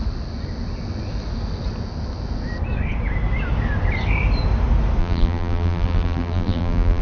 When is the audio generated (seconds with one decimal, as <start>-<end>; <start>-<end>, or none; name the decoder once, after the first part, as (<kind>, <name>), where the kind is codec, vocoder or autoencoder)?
5.0-7.0 (vocoder, BigVGAN v2)